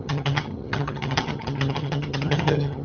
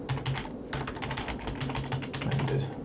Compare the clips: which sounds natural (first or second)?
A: second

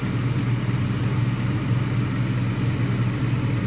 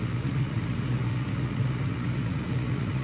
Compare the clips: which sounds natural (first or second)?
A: first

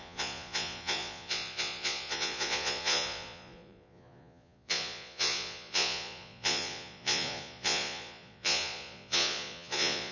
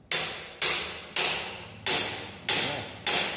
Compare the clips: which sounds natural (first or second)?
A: second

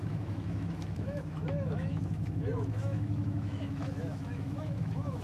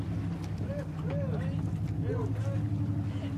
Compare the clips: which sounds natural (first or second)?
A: second